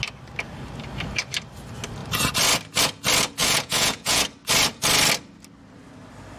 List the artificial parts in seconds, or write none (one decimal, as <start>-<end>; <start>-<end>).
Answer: 3.4-4.2